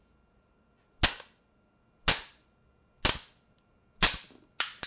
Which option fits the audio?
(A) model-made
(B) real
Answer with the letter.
B